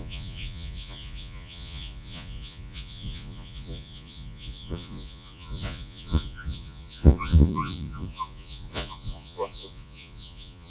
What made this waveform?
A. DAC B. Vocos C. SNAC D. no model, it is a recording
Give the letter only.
B